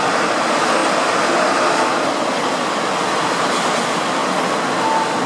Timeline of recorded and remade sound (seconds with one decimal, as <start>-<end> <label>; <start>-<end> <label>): 0.0-0.8 remade; 0.8-3.2 recorded; 3.2-4.2 remade; 4.2-5.3 recorded